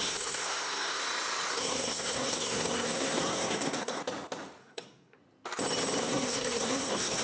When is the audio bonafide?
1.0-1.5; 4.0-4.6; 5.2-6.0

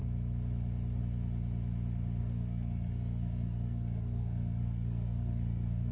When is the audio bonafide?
0.0-2.2

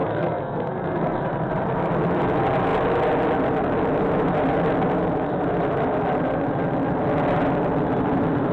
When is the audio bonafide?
1.2-8.5

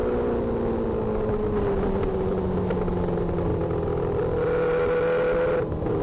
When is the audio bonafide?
0.0-6.0

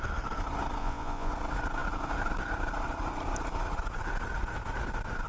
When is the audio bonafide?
0.0-0.8; 1.3-5.3